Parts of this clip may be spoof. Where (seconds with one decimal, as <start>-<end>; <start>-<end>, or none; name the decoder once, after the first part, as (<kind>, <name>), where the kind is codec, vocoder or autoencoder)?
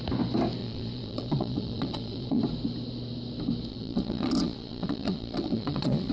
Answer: 0.6-2.4 (vocoder, Vocos); 3.7-6.1